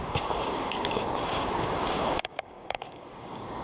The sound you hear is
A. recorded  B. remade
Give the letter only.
B